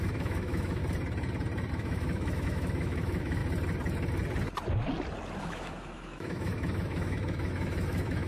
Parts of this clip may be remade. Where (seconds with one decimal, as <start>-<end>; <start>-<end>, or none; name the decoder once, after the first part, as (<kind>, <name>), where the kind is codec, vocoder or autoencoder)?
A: 0.0-0.8 (autoencoder, DAC-VAE); 1.7-3.4; 5.4-8.3